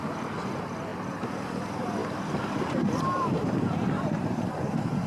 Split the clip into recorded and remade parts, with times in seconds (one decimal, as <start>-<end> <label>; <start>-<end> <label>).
0.0-2.0 recorded; 2.0-4.4 remade; 4.4-5.1 recorded